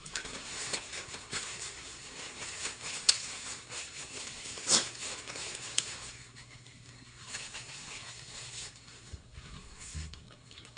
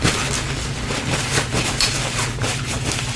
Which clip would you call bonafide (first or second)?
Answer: second